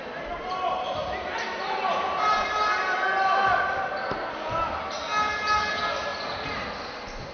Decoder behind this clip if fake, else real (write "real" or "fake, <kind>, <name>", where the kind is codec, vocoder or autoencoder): real